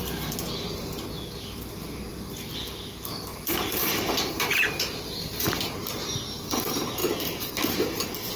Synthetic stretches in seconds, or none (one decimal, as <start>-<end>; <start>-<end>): 3.3-6.0; 7.0-7.5